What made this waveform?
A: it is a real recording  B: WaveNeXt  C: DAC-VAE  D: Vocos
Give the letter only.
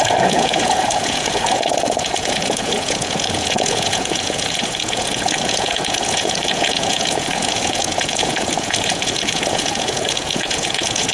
D